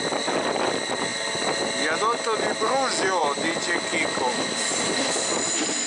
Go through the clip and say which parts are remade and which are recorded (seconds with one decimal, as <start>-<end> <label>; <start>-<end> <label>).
0.0-5.9 recorded